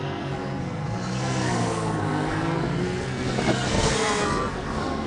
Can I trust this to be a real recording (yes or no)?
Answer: no